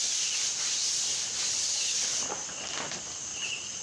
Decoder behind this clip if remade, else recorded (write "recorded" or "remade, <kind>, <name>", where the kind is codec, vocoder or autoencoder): recorded